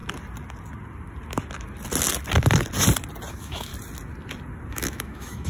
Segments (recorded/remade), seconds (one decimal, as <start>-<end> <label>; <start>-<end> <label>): 0.0-3.3 recorded; 3.3-3.7 remade; 3.7-4.7 recorded; 4.7-5.5 remade